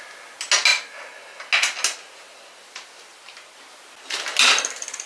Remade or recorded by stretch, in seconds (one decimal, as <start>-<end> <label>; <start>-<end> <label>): 0.0-5.1 recorded